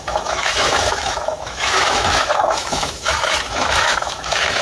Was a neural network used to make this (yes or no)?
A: yes